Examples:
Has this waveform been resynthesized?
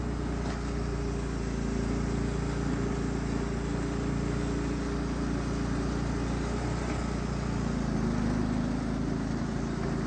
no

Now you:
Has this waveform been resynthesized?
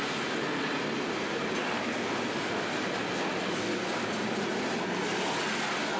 no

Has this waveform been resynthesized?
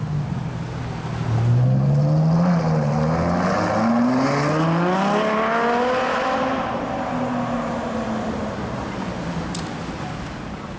no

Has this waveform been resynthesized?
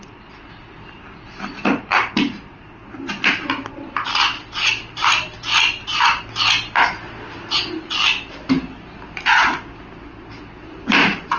no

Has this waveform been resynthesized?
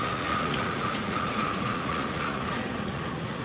yes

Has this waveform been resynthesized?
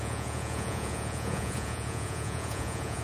yes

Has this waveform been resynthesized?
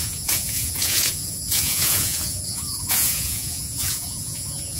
yes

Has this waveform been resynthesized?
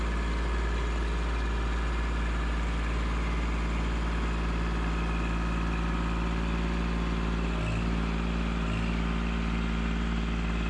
no